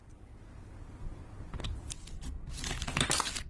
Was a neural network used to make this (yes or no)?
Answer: no